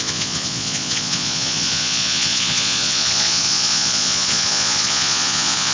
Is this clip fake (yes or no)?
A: yes